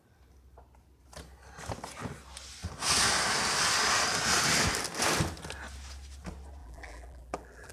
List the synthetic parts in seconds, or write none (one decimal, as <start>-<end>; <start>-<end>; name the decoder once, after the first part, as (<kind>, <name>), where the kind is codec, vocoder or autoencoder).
6.6-7.7 (vocoder, BigVGAN v2)

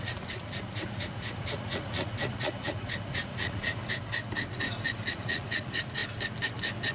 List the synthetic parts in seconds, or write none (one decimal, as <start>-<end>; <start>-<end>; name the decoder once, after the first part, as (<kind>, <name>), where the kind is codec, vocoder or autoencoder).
0.0-3.8 (vocoder, Vocos); 5.1-6.0

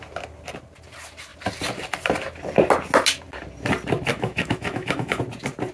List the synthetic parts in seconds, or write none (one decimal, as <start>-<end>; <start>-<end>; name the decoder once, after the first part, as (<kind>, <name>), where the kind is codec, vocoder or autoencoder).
4.1-5.2 (autoencoder, DAC-VAE)

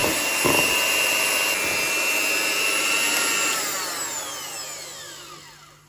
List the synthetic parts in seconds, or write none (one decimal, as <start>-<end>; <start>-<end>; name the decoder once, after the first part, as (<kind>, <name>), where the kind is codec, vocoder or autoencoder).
0.0-1.3 (vocoder, BigVGAN v2)

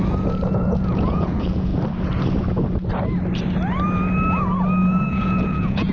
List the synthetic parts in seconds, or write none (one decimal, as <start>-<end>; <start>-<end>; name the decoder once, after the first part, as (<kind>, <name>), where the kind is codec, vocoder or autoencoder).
0.0-1.7 (vocoder, Vocos); 5.1-5.9

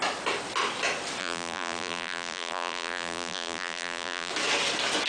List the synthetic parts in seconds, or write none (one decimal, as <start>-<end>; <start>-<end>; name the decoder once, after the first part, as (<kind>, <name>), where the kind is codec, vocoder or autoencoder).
1.2-4.3 (vocoder, BigVGAN v2)

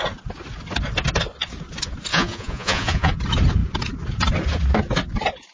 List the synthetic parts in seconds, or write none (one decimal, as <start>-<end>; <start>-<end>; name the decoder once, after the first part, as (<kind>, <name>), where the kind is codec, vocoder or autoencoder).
2.1-3.1 (vocoder, Vocos)

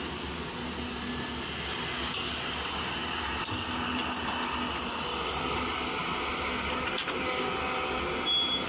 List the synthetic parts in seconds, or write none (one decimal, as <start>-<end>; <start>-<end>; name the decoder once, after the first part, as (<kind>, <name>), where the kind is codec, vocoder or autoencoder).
none